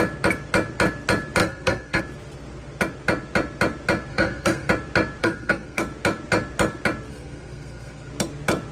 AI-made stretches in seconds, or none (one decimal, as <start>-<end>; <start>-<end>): 1.4-2.0; 4.1-4.7; 5.2-5.8; 7.1-8.1